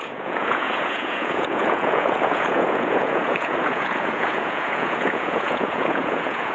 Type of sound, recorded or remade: remade